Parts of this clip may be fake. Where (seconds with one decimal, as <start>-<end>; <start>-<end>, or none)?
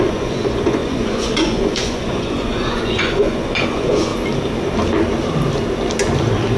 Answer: 0.0-4.1